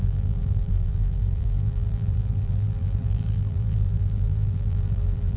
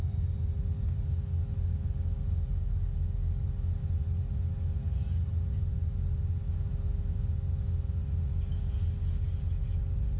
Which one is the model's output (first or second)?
first